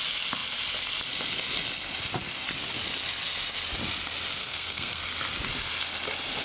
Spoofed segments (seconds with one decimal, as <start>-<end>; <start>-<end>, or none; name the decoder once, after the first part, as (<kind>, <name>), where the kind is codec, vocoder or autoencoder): 4.4-5.0 (codec, SNAC)